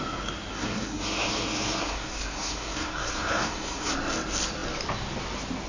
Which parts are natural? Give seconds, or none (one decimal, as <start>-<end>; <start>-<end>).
0.0-0.5; 3.9-5.7